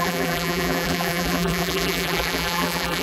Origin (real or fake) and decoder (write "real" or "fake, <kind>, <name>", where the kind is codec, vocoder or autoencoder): fake, vocoder, BigVGAN v2